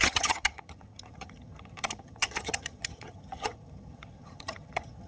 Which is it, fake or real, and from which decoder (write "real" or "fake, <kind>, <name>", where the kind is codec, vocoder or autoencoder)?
fake, vocoder, HiFi-GAN